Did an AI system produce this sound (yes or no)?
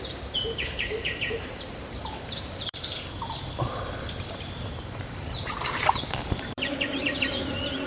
yes